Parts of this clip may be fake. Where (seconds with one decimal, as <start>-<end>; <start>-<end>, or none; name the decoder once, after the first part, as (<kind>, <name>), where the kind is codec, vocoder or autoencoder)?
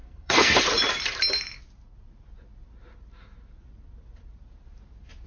0.0-0.6 (codec, SNAC)